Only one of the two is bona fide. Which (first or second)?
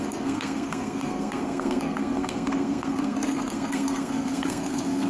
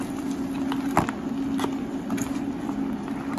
second